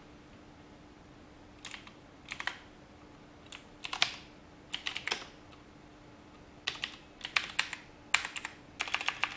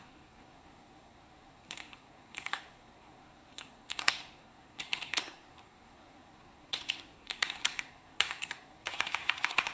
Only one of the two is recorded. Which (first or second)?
first